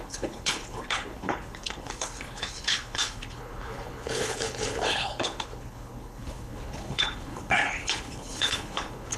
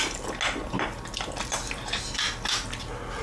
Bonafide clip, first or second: second